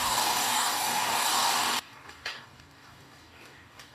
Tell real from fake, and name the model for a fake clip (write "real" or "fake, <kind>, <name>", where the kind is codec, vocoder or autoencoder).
fake, codec, DAC